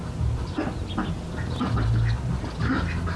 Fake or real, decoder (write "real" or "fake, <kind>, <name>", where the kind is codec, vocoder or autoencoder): real